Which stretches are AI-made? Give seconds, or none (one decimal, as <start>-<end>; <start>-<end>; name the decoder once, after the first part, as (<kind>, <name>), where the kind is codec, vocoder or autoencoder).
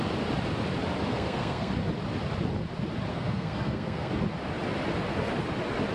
1.1-1.7 (codec, SNAC); 3.1-4.1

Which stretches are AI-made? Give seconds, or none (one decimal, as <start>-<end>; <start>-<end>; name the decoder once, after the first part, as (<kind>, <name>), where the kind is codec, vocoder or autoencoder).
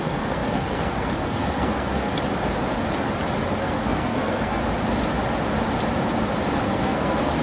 0.0-2.1 (codec, SNAC); 3.6-4.6; 6.5-7.4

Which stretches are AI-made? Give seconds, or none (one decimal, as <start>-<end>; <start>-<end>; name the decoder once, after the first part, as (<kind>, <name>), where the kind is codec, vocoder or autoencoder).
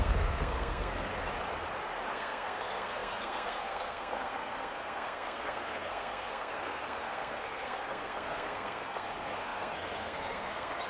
0.0-1.1 (codec, SNAC); 2.1-10.9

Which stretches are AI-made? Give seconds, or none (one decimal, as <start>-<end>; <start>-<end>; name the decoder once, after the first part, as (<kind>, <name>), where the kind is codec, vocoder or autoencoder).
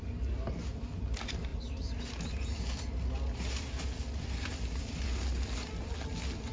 none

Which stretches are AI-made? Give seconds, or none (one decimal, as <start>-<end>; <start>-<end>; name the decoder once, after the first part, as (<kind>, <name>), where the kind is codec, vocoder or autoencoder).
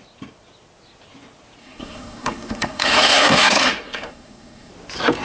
1.6-4.7 (codec, SNAC)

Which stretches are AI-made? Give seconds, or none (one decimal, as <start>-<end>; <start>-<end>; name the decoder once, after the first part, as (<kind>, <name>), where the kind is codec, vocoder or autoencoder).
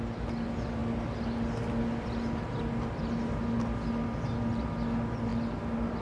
none